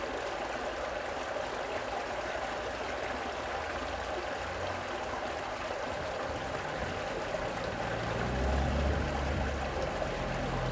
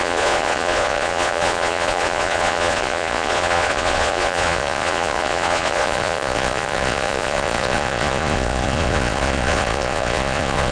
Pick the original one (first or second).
first